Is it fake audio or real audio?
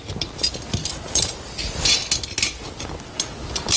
real